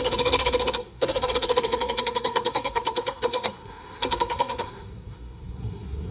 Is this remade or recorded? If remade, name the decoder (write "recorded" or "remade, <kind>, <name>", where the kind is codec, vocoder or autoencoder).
remade, codec, SNAC